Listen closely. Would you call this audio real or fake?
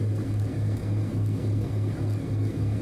fake